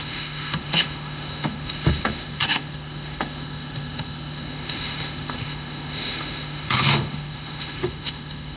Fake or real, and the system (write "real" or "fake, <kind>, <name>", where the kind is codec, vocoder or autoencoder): fake, autoencoder, DAC-VAE